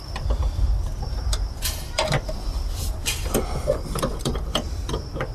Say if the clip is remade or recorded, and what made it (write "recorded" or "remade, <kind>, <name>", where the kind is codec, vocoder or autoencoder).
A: remade, vocoder, BigVGAN v2